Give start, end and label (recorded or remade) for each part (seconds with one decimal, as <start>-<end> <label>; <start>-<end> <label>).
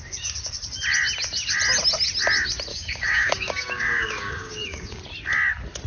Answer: 0.0-2.7 recorded; 2.7-5.0 remade; 5.0-5.9 recorded